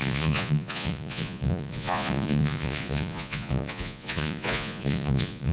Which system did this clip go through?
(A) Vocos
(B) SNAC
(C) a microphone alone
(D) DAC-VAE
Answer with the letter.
A